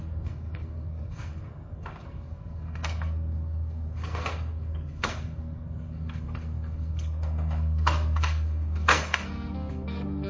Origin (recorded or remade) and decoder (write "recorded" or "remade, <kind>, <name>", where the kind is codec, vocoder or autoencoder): remade, codec, SNAC